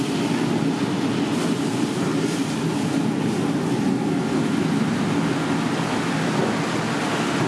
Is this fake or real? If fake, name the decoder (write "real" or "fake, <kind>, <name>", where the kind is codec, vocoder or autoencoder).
real